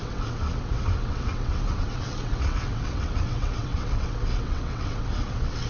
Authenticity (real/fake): fake